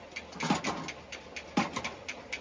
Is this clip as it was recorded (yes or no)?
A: yes